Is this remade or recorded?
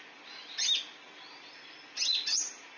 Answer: recorded